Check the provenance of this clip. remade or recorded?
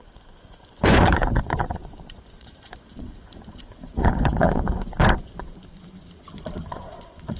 remade